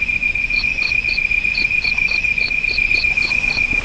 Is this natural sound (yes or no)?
no